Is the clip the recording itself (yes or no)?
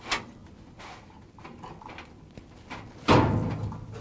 yes